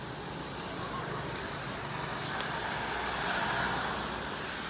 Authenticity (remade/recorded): recorded